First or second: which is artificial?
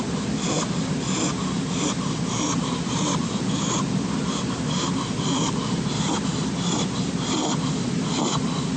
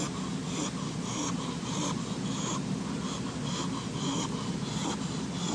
first